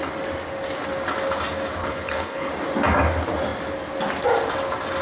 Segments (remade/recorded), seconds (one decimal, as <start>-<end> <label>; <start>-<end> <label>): 0.0-1.8 recorded; 1.8-2.5 remade; 2.5-5.0 recorded